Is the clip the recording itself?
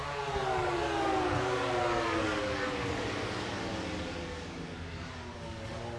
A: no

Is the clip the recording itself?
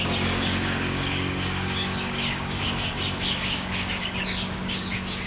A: no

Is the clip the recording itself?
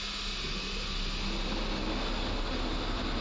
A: yes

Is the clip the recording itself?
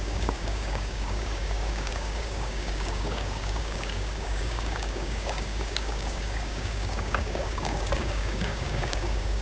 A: no